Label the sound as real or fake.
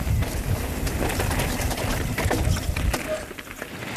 real